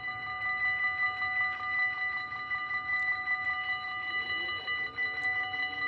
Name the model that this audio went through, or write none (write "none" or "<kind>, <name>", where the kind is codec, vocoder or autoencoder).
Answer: none